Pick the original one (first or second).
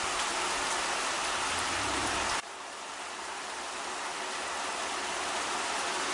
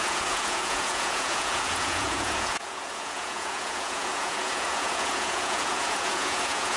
first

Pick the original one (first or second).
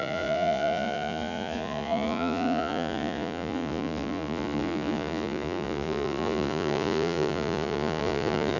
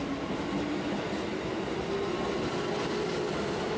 second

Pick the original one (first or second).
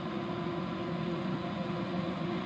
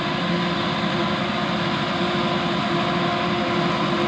second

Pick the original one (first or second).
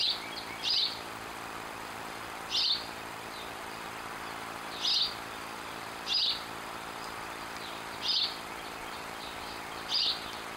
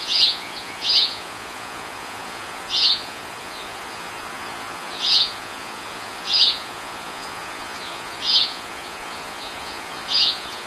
first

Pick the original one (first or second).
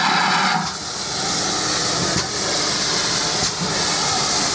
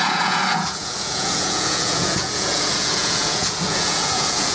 first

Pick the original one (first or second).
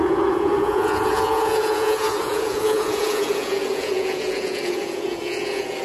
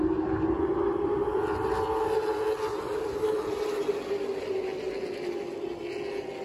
second